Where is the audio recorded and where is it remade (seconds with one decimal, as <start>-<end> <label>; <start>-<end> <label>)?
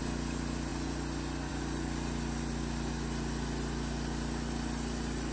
0.0-5.3 recorded